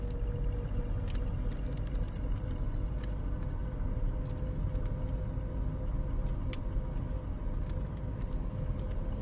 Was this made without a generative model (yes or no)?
yes